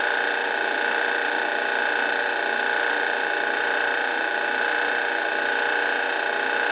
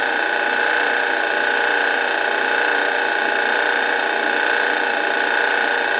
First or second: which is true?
first